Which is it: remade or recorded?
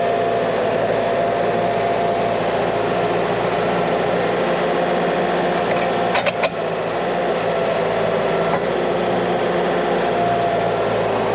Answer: recorded